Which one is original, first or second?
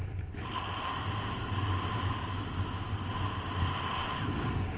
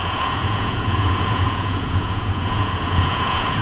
first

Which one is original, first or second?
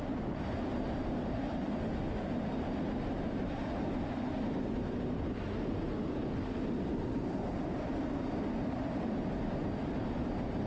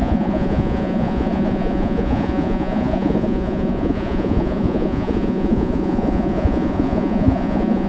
first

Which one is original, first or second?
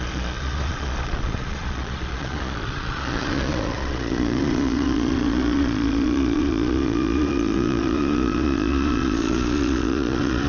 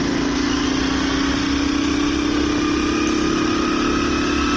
second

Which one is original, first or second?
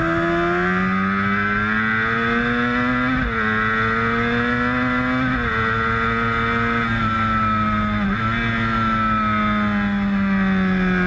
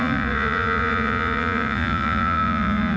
first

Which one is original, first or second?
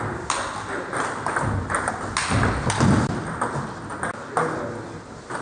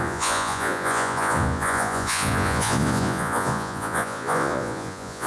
first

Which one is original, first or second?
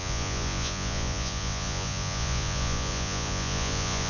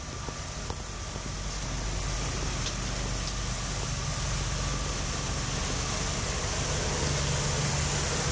second